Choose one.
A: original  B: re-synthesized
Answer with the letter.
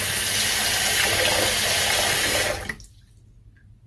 A